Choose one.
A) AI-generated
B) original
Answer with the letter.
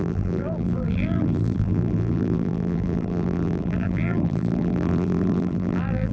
A